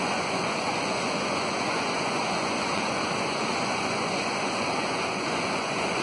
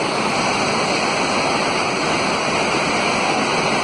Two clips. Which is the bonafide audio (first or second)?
second